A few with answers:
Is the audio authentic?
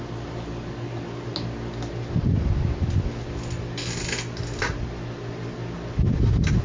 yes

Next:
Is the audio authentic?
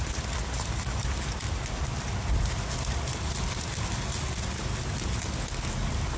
yes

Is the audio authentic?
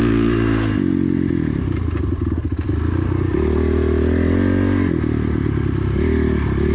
yes